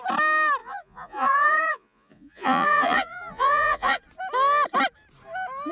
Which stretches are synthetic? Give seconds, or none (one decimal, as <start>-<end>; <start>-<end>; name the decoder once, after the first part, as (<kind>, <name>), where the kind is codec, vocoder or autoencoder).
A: 0.6-4.0 (vocoder, Vocos)

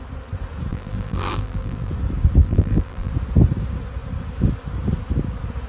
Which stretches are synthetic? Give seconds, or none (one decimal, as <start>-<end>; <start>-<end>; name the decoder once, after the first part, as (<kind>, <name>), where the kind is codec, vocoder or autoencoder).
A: 0.7-1.9 (vocoder, BigVGAN v2); 2.4-3.1